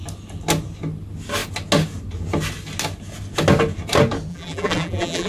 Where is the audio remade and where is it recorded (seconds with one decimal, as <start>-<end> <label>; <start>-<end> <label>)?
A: 0.0-4.3 recorded; 4.3-5.3 remade